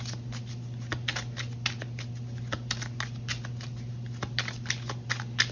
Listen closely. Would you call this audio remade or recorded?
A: recorded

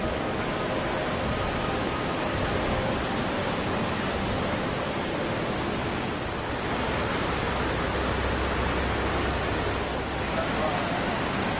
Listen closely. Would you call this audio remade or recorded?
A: recorded